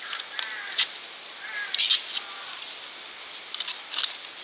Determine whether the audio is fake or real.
real